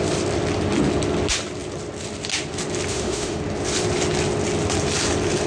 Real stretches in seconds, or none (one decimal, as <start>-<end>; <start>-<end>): 0.0-2.9; 3.4-5.5